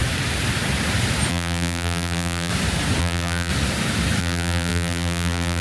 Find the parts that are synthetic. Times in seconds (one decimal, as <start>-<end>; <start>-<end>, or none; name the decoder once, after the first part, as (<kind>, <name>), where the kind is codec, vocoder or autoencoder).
1.3-2.5 (vocoder, BigVGAN v2); 3.0-3.5; 4.2-5.6